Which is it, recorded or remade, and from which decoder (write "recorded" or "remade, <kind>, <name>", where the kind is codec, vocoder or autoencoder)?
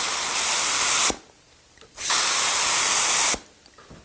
recorded